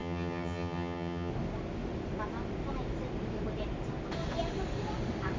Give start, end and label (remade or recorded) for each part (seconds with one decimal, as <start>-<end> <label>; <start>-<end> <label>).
0.0-1.3 remade; 1.3-5.4 recorded